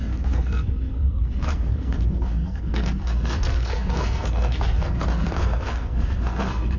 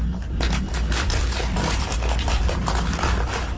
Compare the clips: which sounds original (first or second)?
second